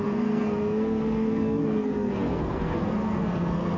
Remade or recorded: remade